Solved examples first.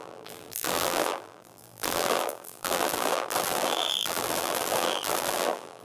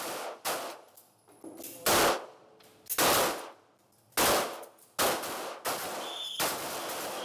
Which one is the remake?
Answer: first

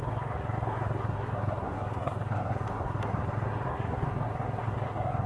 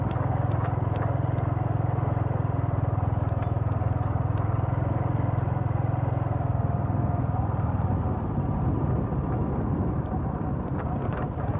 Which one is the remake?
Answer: first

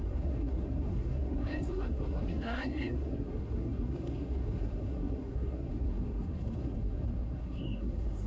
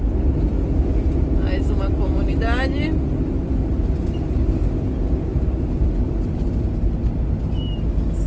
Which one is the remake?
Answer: first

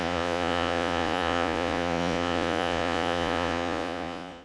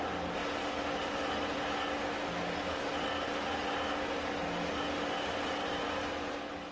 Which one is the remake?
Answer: first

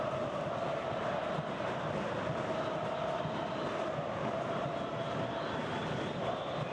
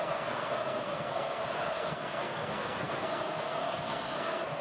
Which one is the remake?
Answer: second